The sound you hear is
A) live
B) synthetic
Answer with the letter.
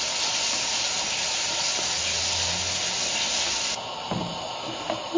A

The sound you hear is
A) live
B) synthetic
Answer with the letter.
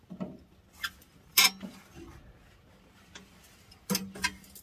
A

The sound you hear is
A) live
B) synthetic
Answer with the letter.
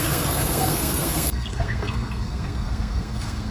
B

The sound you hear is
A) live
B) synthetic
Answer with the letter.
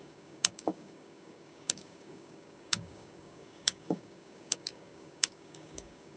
B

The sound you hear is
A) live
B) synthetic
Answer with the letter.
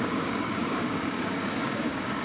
B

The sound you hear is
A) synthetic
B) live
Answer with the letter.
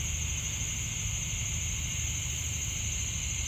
B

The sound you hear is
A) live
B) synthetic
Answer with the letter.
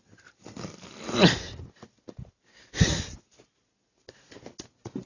A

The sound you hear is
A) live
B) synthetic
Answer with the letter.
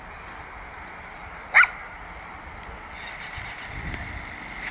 A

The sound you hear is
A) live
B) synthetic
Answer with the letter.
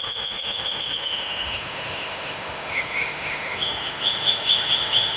B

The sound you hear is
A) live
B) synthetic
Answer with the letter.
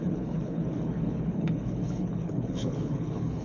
B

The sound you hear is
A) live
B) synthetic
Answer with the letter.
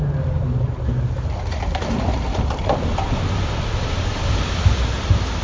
A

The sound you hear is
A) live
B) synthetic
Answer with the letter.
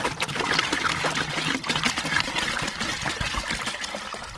A